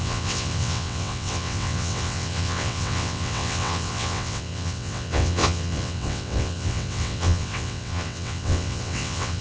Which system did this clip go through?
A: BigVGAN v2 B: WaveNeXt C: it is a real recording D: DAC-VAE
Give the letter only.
B